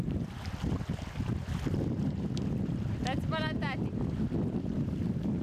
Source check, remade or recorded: recorded